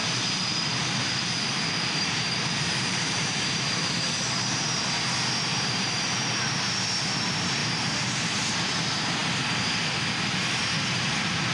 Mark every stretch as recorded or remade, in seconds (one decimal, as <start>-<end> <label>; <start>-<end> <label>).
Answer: 0.0-4.9 remade; 4.9-7.6 recorded; 7.6-8.5 remade; 8.5-11.5 recorded